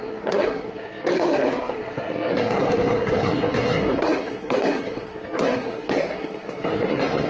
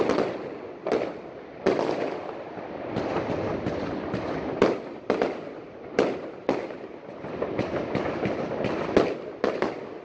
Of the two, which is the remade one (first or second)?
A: first